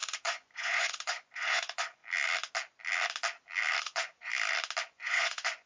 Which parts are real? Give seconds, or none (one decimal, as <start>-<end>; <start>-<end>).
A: 2.0-3.8; 4.3-4.8